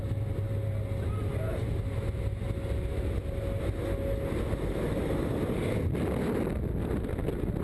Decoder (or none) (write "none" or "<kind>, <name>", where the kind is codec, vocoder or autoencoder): none